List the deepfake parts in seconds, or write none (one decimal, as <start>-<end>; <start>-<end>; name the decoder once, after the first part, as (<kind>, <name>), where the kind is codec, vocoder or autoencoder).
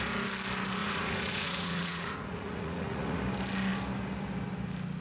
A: 0.8-3.2 (vocoder, Vocos)